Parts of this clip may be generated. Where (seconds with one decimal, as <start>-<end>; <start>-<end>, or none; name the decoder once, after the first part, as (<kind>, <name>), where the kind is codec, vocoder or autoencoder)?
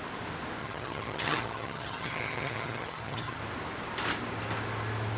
0.6-3.4 (vocoder, HiFi-GAN)